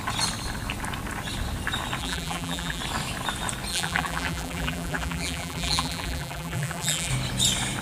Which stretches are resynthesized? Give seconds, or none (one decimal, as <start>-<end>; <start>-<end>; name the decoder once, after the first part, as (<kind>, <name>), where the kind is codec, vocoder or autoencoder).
2.0-2.8 (vocoder, BigVGAN v2); 3.7-7.1